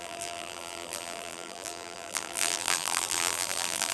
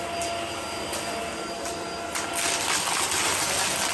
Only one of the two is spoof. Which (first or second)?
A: first